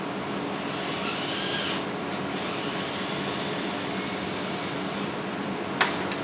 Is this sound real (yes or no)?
yes